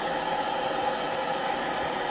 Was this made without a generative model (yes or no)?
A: yes